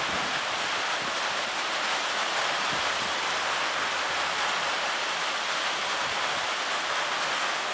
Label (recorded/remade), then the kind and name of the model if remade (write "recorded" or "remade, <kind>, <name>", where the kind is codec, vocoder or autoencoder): recorded